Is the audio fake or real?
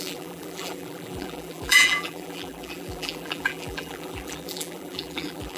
fake